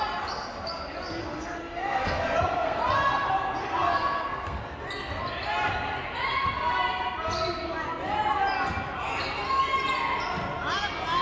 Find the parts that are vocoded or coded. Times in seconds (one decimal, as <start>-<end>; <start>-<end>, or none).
1.2-2.8; 3.6-4.6